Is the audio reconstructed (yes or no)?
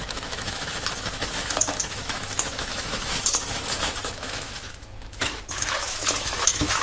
yes